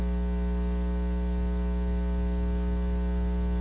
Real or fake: real